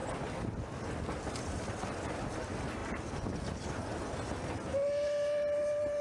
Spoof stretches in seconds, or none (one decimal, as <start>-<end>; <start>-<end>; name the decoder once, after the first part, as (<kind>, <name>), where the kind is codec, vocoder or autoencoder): none